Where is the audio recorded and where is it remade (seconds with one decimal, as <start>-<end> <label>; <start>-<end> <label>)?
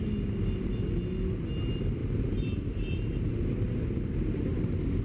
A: 0.0-5.0 recorded